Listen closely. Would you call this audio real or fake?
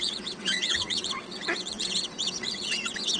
fake